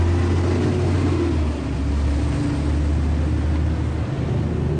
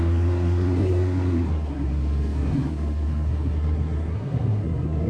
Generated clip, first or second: second